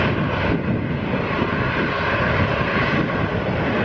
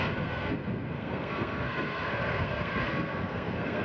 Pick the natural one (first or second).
first